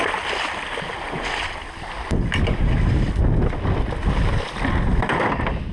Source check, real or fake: real